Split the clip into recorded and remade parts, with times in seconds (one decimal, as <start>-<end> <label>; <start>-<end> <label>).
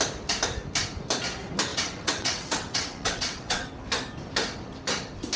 0.0-1.7 recorded; 1.7-3.7 remade; 3.7-5.4 recorded